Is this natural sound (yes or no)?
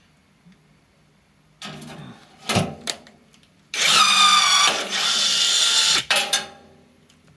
yes